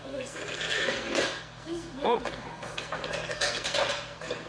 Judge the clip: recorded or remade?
remade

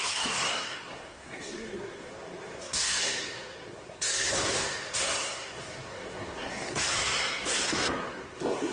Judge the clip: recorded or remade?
remade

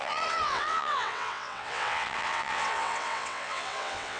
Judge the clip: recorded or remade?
remade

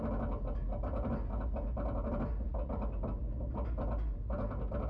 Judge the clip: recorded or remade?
recorded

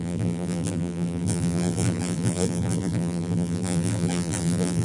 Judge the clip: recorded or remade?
remade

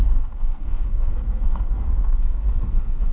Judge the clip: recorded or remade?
remade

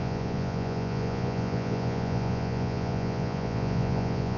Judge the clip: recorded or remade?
remade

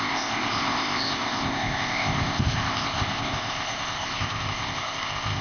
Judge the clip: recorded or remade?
remade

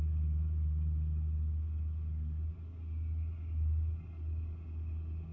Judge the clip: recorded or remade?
recorded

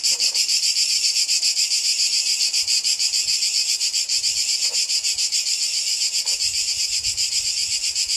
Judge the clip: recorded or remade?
remade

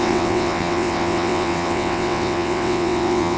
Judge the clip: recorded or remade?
remade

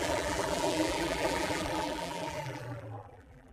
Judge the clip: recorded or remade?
remade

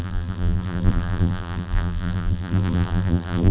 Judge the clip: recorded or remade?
remade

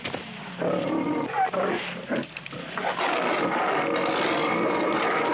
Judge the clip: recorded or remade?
recorded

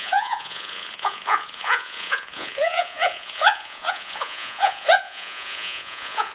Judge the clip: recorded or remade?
remade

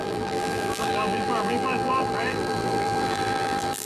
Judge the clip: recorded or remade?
remade